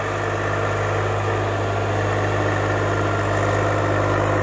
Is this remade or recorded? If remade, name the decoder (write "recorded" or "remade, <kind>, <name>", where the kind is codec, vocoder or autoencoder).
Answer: recorded